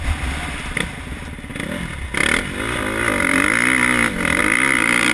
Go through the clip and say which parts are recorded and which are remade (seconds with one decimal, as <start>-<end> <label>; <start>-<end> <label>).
0.0-5.1 recorded